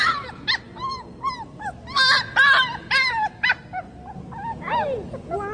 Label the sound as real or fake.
real